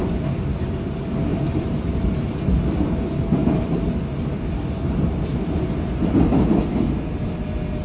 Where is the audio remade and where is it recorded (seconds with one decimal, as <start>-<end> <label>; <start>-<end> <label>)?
0.0-1.3 recorded; 1.3-2.3 remade; 2.3-7.8 recorded